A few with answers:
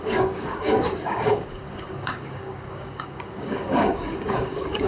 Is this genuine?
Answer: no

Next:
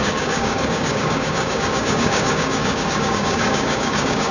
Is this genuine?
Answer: no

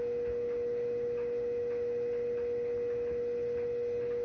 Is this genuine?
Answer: yes